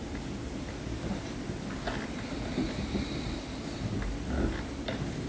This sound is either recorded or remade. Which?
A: recorded